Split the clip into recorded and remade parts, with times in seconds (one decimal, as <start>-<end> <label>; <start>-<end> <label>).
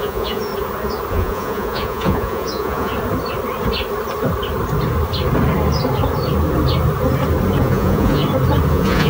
0.0-0.5 remade; 0.5-1.1 recorded; 1.1-2.9 remade; 2.9-7.6 recorded; 7.6-8.2 remade; 8.2-8.7 recorded; 8.7-9.1 remade